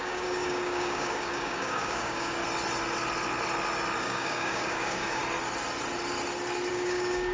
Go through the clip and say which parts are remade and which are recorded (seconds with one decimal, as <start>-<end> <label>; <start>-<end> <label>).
0.0-2.4 remade; 2.4-4.0 recorded; 4.0-5.2 remade; 5.2-6.7 recorded; 6.7-7.3 remade